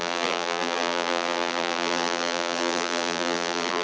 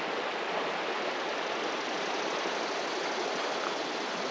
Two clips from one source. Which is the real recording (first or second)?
second